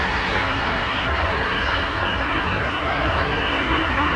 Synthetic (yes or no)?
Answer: yes